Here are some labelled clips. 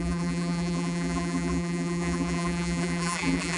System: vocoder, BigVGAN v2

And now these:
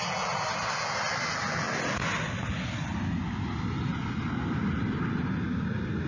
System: none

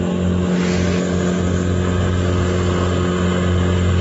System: none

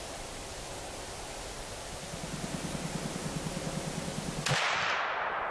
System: none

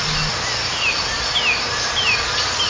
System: none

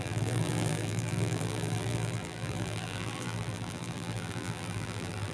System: vocoder, BigVGAN v2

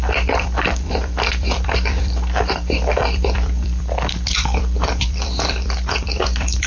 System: vocoder, BigVGAN v2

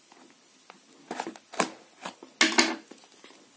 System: none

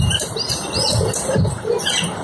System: vocoder, BigVGAN v2